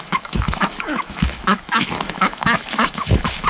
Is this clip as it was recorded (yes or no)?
no